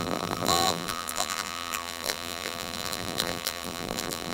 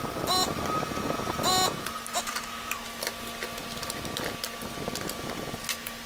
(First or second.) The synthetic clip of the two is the first